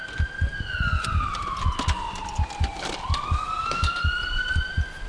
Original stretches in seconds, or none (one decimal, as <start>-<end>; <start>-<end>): 0.0-5.1